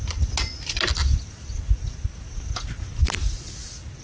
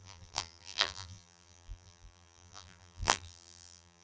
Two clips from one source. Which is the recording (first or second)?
first